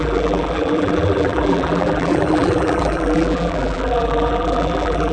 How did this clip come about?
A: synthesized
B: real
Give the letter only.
A